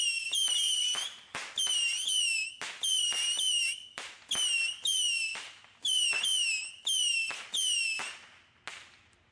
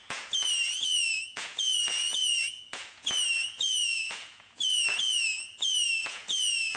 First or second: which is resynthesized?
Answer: second